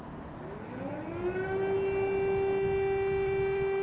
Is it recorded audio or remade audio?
recorded